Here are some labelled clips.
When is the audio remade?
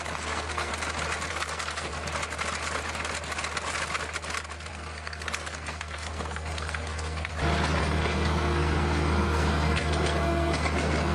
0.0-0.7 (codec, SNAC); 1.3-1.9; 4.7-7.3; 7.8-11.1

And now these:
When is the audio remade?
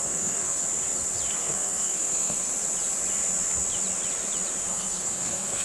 0.0-0.6 (codec, SNAC); 1.4-2.5; 4.7-5.6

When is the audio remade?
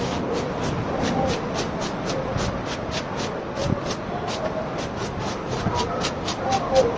none